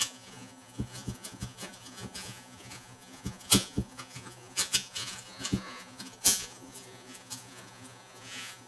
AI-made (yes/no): yes